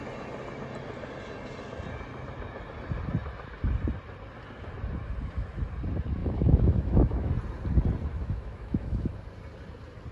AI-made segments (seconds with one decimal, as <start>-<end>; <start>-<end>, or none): 6.2-7.3; 8.1-9.1